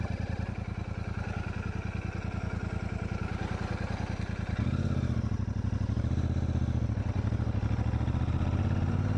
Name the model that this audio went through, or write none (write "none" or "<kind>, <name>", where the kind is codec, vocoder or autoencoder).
none